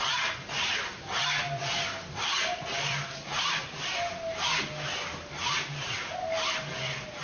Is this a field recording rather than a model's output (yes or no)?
yes